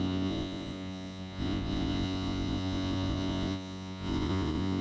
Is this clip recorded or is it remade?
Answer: remade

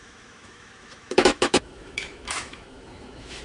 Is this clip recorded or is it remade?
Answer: remade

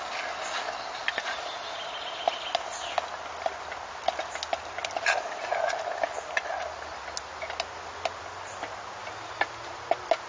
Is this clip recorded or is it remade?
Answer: recorded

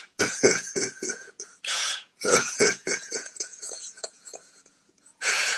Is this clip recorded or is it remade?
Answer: remade